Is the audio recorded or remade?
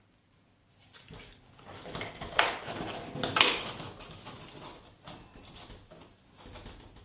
recorded